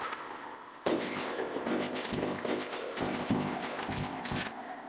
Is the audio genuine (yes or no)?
no